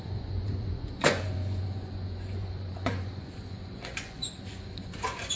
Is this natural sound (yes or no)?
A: no